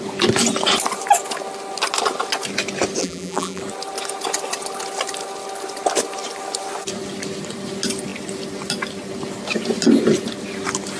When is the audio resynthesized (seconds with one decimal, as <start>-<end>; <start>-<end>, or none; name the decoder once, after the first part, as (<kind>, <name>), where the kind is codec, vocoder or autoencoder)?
3.0-3.6 (vocoder, BigVGAN v2)